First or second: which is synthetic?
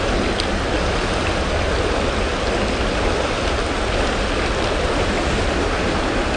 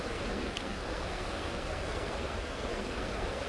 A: second